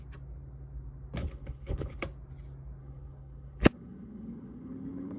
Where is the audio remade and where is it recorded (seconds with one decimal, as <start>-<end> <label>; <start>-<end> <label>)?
0.0-1.2 recorded; 1.2-2.0 remade; 2.0-2.8 recorded; 2.8-5.2 remade